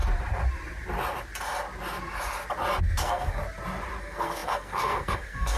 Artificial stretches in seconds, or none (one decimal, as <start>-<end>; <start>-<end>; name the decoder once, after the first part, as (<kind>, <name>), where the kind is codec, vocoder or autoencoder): 2.8-3.4 (codec, SNAC); 4.0-5.6